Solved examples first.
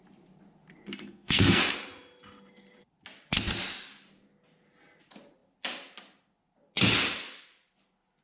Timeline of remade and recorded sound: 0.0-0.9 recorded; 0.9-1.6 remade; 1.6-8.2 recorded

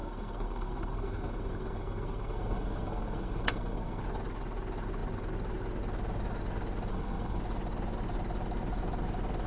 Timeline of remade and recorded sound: 0.0-4.0 remade; 4.0-6.9 recorded; 6.9-7.4 remade; 7.4-9.5 recorded